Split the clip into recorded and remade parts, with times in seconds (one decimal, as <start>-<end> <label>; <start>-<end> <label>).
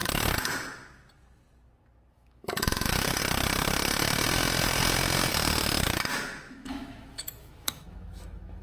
0.0-2.1 recorded; 2.1-3.2 remade; 3.2-6.5 recorded; 6.5-8.6 remade